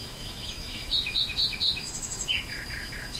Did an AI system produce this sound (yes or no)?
yes